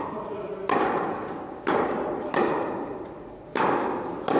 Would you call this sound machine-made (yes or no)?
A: no